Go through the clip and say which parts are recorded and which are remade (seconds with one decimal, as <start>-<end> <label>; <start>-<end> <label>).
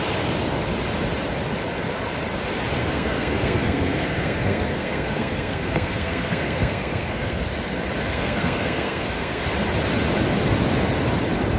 0.0-2.8 recorded; 2.8-7.4 remade; 7.4-8.1 recorded; 8.1-9.4 remade; 9.4-11.6 recorded